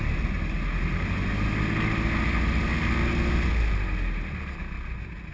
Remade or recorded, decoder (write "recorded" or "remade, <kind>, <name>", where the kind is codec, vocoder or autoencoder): recorded